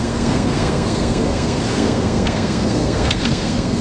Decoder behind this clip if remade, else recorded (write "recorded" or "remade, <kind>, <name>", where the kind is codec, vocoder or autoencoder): remade, codec, SNAC